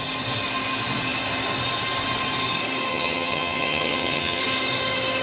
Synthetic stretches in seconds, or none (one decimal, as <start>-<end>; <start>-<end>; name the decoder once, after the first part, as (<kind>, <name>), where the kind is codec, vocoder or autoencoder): 2.9-4.4 (vocoder, HiFi-GAN)